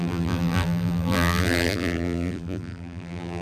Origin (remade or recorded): remade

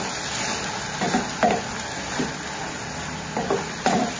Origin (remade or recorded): recorded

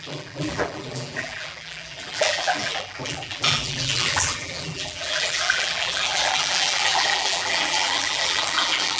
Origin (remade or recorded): remade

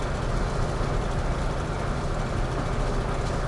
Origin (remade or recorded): recorded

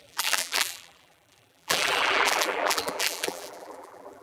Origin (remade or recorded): remade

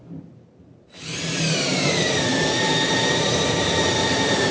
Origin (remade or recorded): remade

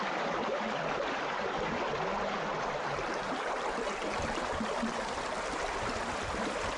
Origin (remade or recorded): remade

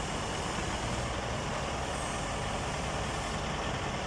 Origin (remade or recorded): recorded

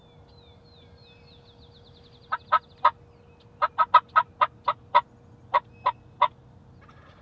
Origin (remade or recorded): recorded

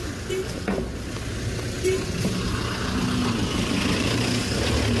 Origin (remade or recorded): recorded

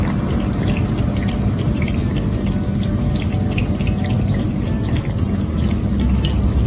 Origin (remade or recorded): recorded